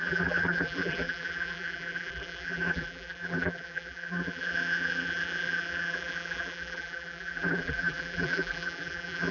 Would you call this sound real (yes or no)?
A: no